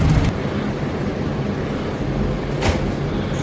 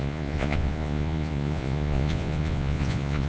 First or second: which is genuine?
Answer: first